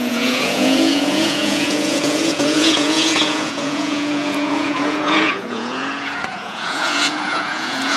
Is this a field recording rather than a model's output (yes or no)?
no